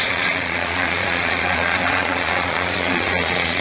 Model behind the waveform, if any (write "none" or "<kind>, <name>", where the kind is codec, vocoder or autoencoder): vocoder, Vocos